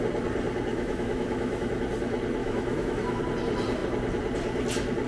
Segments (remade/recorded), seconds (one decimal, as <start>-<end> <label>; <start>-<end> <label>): 0.0-0.7 recorded; 0.7-1.7 remade; 1.7-2.4 recorded; 2.4-3.2 remade; 3.2-5.1 recorded